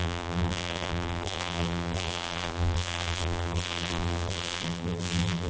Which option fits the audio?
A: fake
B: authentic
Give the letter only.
A